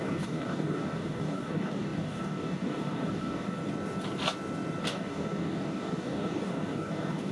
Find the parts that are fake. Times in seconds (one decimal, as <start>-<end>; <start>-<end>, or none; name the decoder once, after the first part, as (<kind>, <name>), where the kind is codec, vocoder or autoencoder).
0.0-3.6 (codec, DAC); 4.8-7.3